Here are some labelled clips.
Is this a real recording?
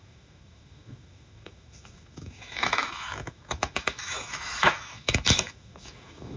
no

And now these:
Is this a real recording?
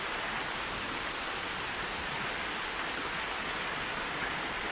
yes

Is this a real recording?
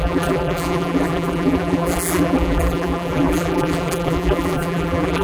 no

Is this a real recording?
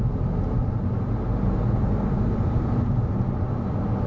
yes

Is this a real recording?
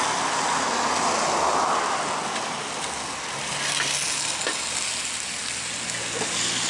yes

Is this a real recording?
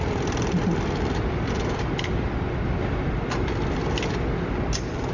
yes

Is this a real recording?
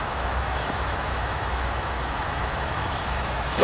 no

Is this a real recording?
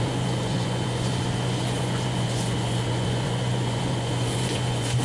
no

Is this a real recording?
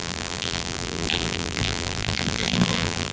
no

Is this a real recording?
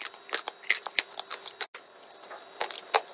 yes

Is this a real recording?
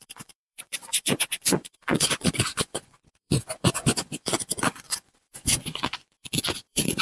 no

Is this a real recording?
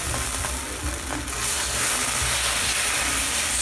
yes